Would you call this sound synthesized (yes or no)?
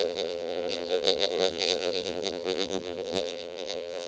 yes